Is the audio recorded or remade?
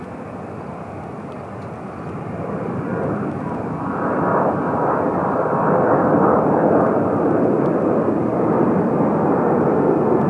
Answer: remade